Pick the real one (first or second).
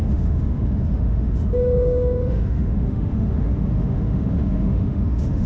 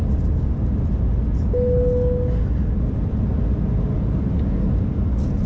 second